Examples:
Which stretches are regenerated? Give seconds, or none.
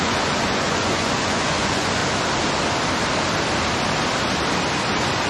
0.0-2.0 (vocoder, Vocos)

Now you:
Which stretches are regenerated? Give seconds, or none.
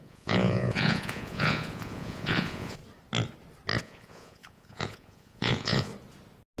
0.0-2.8 (vocoder, Vocos); 3.8-5.9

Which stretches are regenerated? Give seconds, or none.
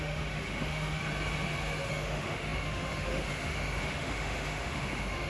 0.0-1.0 (autoencoder, DAC-VAE); 1.9-5.3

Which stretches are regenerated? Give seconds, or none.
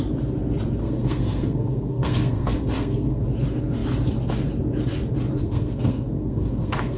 0.8-3.2 (codec, SNAC); 5.4-7.0